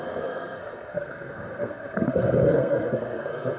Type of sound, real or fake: fake